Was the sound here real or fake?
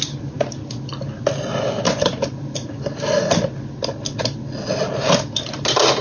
real